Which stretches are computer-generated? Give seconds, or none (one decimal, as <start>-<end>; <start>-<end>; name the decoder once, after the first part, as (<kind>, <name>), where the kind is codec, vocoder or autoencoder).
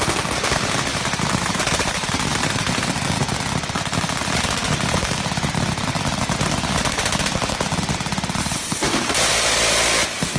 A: 0.9-2.5 (vocoder, BigVGAN v2); 8.1-9.3